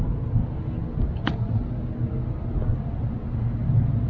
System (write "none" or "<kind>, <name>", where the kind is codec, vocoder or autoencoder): none